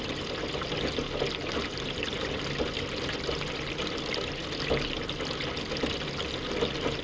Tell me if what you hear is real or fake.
real